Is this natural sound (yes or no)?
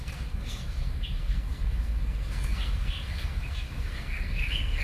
no